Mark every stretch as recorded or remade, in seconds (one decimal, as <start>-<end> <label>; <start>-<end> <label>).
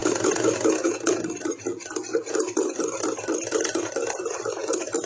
0.0-1.2 remade; 1.2-5.1 recorded